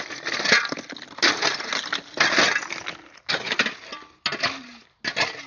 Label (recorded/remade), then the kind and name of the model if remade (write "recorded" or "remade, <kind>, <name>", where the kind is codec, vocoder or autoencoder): recorded